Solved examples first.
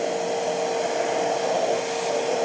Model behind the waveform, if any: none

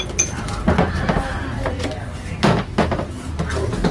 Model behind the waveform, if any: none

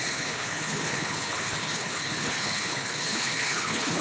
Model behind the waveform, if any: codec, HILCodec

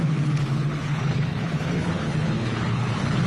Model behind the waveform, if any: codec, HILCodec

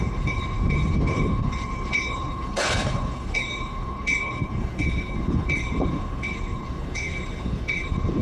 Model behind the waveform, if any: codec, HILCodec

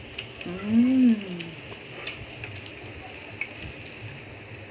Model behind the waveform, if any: none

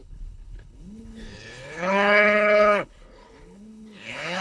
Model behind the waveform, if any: codec, HILCodec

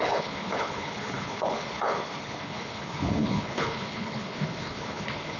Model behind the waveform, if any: codec, HILCodec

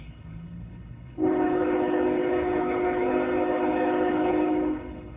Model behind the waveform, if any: codec, HILCodec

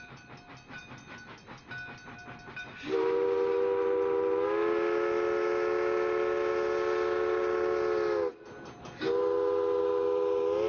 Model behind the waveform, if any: none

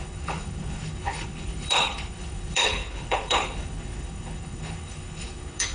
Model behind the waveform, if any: codec, HILCodec